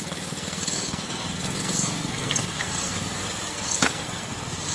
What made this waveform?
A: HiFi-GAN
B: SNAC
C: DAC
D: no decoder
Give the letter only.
B